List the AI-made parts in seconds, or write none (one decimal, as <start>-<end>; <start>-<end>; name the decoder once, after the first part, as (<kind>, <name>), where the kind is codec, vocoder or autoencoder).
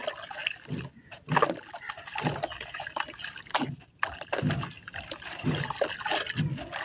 none